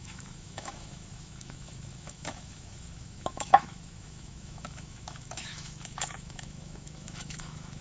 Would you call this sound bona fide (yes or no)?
no